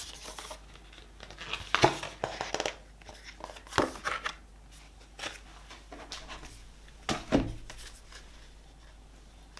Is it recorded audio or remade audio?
recorded